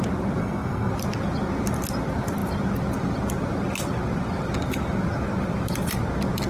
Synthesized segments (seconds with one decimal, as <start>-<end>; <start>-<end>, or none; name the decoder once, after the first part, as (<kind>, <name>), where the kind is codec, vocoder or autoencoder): 0.4-0.9 (codec, SNAC)